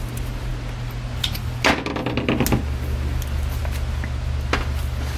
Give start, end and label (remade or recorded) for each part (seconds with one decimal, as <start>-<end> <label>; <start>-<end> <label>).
0.0-5.2 recorded